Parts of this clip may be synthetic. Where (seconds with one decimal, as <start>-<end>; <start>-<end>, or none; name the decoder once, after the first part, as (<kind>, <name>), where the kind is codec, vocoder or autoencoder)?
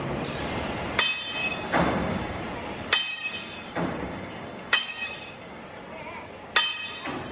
1.4-2.4 (codec, DAC); 3.1-5.6